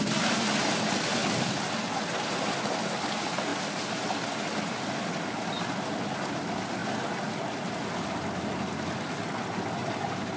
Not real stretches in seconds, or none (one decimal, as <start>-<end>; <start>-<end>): none